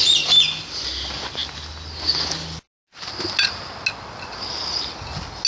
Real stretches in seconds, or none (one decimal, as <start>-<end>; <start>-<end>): 0.0-5.5

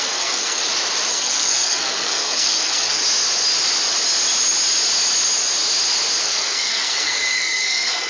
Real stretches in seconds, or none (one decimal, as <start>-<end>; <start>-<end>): 0.6-1.1; 3.0-6.2

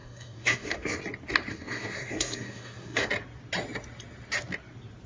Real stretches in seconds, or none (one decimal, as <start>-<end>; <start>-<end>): 1.0-1.5; 3.1-5.1

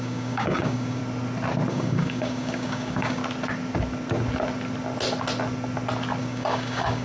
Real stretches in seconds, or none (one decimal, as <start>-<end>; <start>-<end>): 1.0-1.7; 3.2-6.2

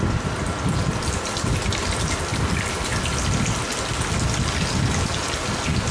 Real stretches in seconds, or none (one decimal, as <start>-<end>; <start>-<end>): 0.0-5.9

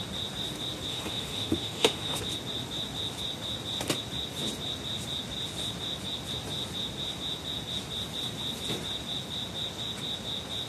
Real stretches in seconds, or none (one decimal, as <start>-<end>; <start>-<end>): 0.0-0.9; 2.2-10.7

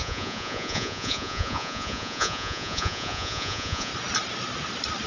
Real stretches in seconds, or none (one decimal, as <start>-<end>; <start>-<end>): 3.9-5.1